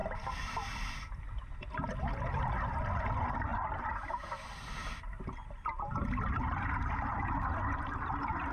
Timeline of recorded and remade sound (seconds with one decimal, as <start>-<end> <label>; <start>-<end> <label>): 0.0-8.5 recorded